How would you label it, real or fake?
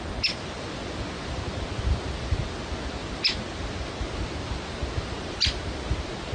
real